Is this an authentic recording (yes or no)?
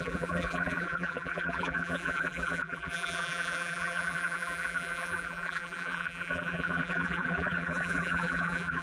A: no